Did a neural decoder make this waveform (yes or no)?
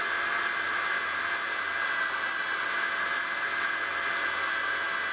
no